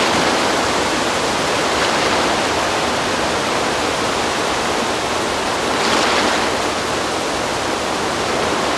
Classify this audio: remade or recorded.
recorded